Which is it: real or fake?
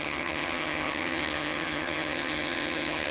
fake